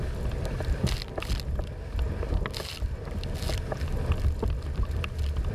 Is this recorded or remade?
recorded